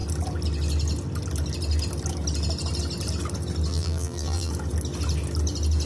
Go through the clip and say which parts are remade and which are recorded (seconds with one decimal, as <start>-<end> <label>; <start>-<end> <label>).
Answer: 0.0-3.7 recorded; 3.7-4.5 remade; 4.5-5.9 recorded